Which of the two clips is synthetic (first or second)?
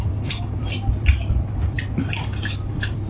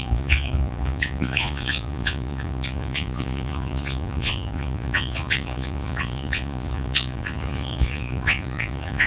second